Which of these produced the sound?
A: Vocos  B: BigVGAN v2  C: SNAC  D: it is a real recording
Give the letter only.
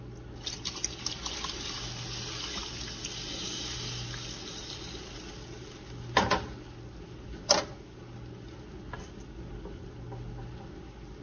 D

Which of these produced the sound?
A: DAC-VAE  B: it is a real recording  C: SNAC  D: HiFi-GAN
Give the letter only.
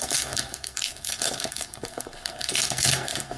C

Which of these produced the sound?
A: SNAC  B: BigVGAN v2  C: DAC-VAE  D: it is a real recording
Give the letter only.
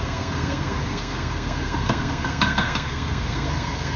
A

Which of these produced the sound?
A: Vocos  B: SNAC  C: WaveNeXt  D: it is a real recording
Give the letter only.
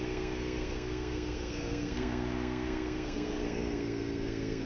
B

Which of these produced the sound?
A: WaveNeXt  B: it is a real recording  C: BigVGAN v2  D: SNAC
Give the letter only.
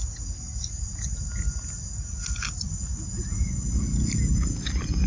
B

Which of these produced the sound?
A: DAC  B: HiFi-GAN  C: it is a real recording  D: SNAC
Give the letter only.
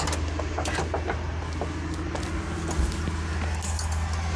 C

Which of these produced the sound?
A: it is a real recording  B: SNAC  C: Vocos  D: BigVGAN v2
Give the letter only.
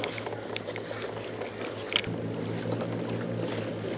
A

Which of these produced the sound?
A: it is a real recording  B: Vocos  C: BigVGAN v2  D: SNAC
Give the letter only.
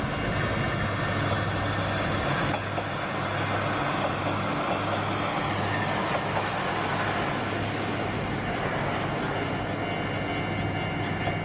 A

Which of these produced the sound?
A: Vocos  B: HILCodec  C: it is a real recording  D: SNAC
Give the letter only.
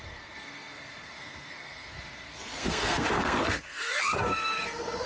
D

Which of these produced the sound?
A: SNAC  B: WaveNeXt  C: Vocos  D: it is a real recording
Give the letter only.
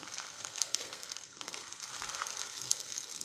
A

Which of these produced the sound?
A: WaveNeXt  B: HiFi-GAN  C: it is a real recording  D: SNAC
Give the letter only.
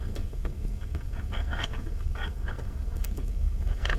D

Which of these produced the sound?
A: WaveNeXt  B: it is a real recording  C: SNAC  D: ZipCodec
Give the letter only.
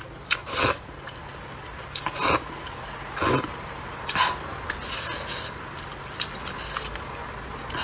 B